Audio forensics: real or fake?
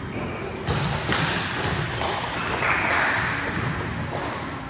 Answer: real